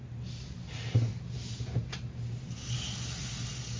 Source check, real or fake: real